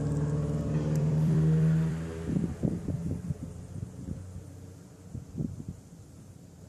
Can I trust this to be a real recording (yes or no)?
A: no